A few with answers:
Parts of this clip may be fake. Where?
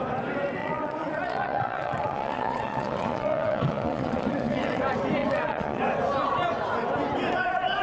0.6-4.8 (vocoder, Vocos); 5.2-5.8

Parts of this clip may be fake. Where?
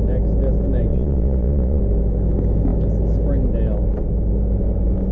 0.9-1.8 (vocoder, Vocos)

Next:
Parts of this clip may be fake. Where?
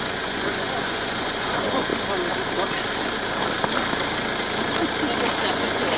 0.0-1.9 (vocoder, Vocos); 5.5-6.0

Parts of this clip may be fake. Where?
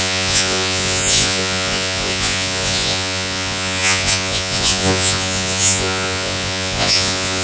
0.0-7.4 (vocoder, Vocos)